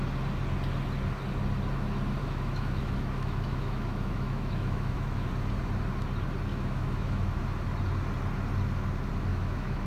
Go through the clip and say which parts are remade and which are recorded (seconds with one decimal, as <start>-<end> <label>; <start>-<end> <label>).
0.0-2.2 recorded; 2.2-5.3 remade; 5.3-6.5 recorded; 6.5-7.4 remade; 7.4-9.3 recorded; 9.3-9.9 remade